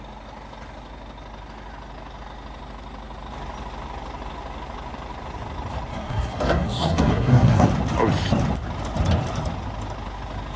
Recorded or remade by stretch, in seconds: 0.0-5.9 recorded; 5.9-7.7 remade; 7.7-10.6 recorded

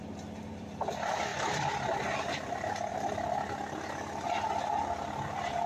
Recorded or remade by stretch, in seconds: 0.0-2.9 remade; 2.9-5.7 recorded

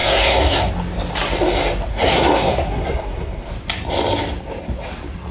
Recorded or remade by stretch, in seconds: 0.0-0.7 remade; 0.7-1.9 recorded; 1.9-3.5 remade; 3.5-5.3 recorded

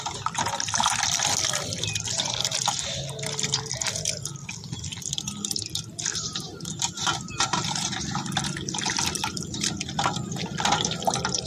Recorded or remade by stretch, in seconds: 0.0-11.5 recorded

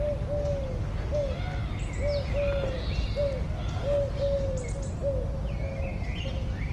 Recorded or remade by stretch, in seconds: 0.0-6.7 recorded

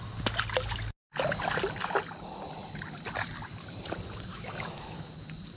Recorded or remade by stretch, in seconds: 0.0-4.3 recorded; 4.3-5.1 remade; 5.1-5.6 recorded